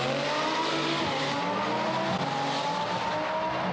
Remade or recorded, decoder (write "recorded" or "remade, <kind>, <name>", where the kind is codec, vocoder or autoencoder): recorded